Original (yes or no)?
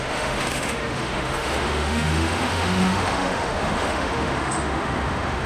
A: no